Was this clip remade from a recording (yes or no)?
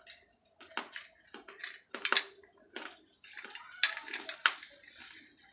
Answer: no